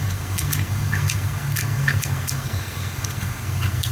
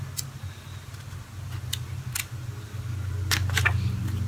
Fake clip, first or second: first